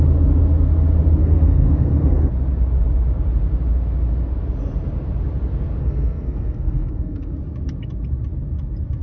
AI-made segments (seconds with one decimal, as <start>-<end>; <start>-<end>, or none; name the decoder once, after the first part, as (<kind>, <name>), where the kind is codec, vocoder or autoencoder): 1.2-2.3 (codec, SNAC); 5.8-7.3